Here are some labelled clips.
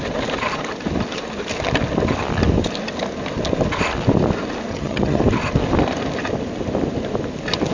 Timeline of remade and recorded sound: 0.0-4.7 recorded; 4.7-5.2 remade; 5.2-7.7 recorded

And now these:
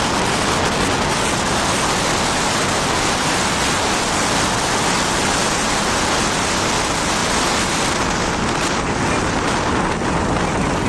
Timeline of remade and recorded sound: 0.0-5.4 recorded; 5.4-6.6 remade; 6.6-7.2 recorded; 7.2-7.9 remade; 7.9-10.9 recorded

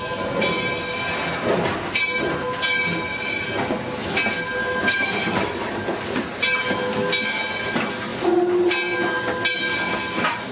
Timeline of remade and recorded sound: 0.0-4.6 recorded; 4.6-5.7 remade; 5.7-10.5 recorded